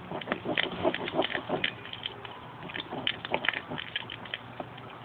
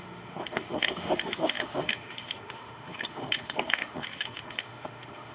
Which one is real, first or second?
first